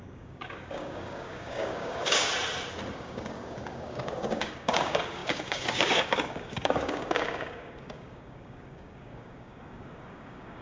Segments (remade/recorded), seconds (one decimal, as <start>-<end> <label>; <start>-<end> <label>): 0.0-2.3 remade; 2.3-2.9 recorded; 2.9-10.6 remade